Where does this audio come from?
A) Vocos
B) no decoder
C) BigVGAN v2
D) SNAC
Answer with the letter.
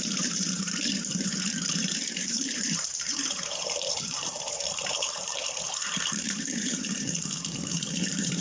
C